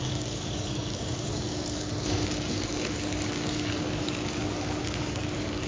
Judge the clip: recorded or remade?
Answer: remade